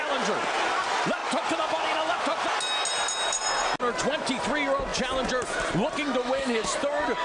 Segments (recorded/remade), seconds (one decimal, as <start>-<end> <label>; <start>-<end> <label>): 0.0-6.2 recorded; 6.2-6.7 remade; 6.7-7.2 recorded